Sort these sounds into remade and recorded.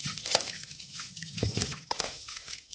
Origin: remade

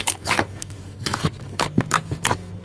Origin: remade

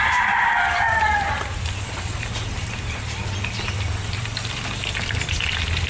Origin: remade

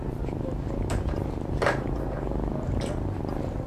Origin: remade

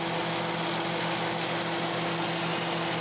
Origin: recorded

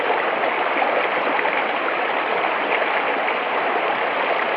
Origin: recorded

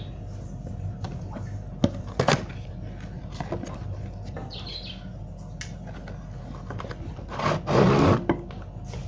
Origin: recorded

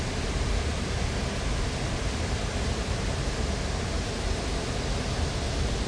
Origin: recorded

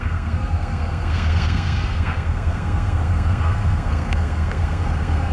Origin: remade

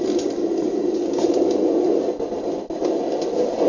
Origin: recorded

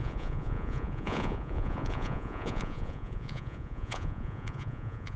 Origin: remade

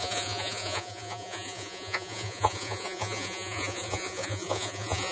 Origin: remade